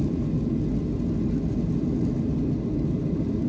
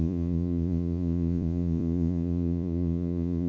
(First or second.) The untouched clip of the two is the first